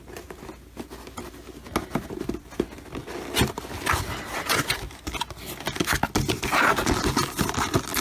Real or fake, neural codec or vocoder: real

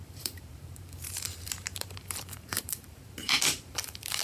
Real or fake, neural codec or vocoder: fake, vocoder, BigVGAN v2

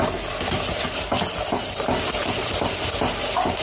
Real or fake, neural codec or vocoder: real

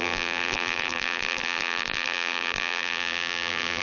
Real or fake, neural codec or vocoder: fake, vocoder, BigVGAN v2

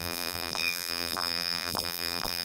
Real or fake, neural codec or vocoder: fake, vocoder, BigVGAN v2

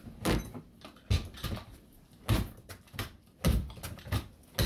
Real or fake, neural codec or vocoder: real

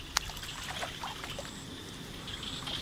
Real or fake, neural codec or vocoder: real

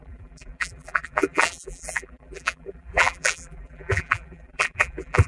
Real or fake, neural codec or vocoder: fake, vocoder, BigVGAN v2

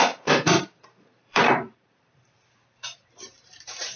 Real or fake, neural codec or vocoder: fake, vocoder, BigVGAN v2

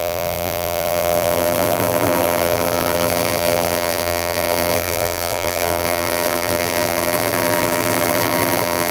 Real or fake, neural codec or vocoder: fake, vocoder, BigVGAN v2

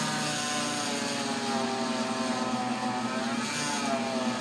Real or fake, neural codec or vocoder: real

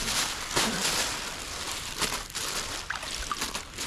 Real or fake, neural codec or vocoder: real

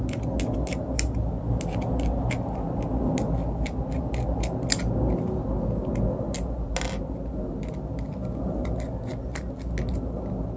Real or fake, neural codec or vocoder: real